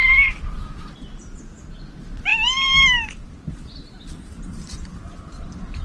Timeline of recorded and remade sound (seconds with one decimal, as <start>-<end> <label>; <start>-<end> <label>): 0.0-2.3 recorded; 2.3-5.8 remade